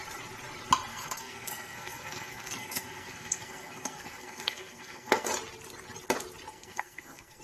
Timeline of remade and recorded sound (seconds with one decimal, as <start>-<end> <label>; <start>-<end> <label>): 0.0-0.9 recorded; 0.9-5.3 remade; 5.3-6.5 recorded; 6.5-7.4 remade